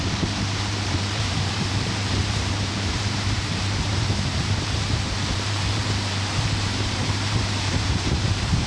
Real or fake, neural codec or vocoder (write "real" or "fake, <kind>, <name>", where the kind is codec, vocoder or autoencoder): fake, vocoder, BigVGAN v2